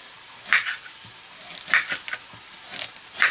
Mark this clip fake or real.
real